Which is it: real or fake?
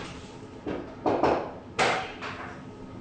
real